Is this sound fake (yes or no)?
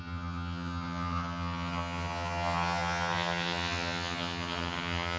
yes